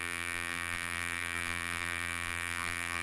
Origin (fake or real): fake